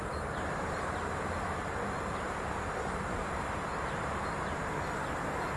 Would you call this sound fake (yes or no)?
yes